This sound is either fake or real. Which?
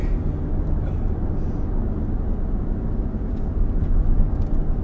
real